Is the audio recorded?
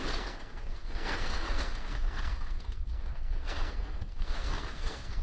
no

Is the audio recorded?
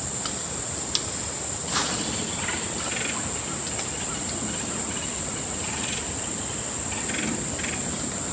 yes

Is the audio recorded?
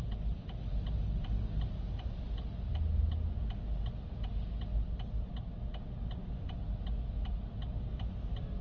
yes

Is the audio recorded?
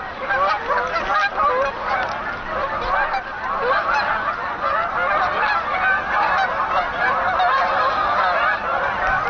yes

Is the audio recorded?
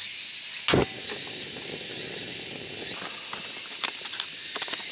yes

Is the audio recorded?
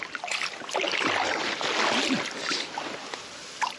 yes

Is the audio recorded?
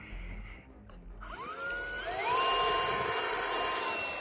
yes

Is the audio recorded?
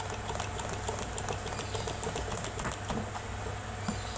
yes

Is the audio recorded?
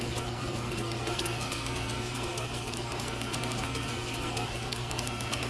no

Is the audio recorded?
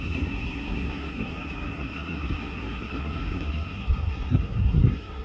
no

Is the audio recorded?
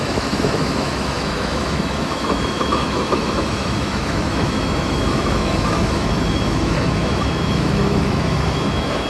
no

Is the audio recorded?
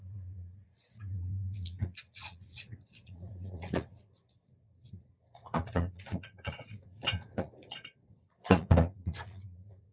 no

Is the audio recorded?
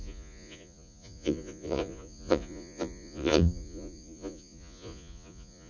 no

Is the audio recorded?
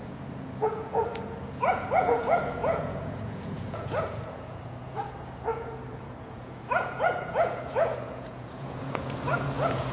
no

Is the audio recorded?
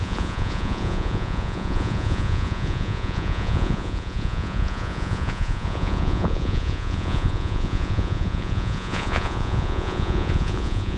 no